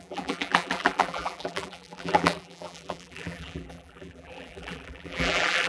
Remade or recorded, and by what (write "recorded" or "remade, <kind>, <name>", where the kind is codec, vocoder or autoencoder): remade, vocoder, BigVGAN v2